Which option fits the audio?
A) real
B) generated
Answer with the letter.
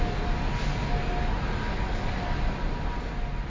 A